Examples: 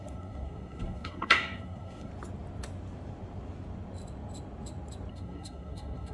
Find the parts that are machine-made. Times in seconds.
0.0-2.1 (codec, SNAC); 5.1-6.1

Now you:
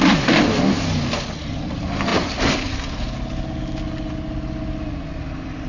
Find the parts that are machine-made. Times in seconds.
none

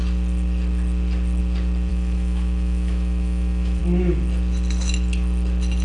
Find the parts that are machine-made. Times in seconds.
1.9-3.8 (autoencoder, DAC-VAE)